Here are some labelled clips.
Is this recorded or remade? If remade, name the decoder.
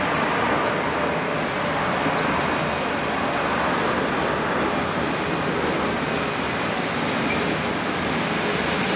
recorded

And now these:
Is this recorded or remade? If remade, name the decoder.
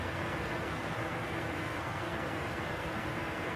remade, codec, SNAC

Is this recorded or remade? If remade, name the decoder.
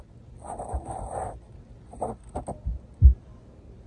recorded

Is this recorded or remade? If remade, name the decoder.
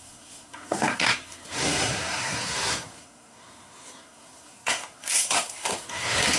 remade, codec, SNAC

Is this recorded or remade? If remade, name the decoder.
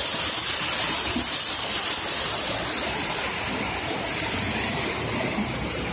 recorded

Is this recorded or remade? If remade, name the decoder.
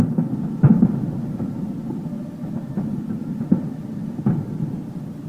recorded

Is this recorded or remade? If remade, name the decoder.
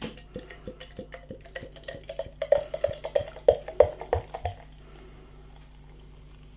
recorded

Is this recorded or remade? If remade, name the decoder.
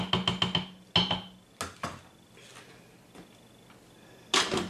recorded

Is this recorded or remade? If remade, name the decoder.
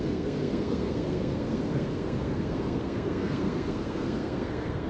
remade, codec, SNAC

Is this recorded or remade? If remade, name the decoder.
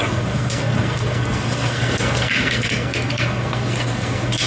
remade, codec, SNAC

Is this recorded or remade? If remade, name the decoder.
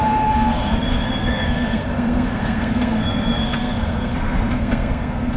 remade, codec, SNAC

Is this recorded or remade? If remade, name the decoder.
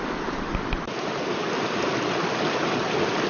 recorded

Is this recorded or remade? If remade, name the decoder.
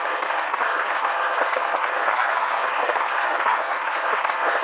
remade, codec, SNAC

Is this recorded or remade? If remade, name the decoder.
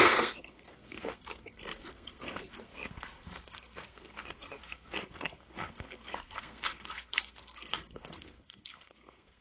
remade, codec, SNAC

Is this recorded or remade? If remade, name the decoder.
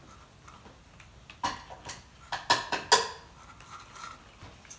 recorded